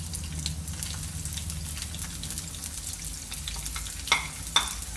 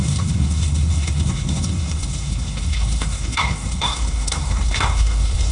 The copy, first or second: second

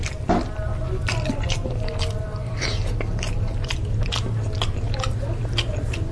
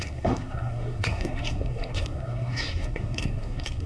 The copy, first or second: second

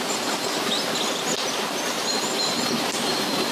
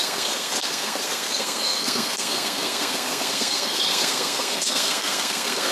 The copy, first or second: second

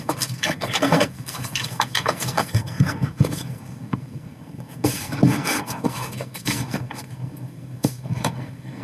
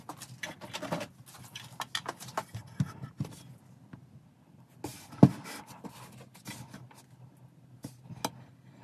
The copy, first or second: first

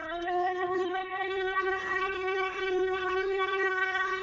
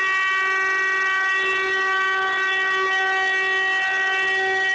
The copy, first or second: first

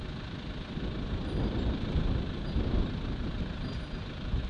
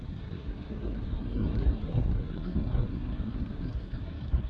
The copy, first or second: second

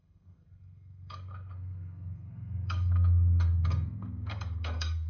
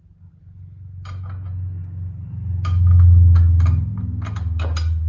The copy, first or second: first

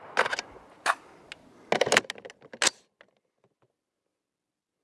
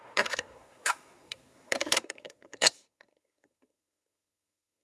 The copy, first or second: second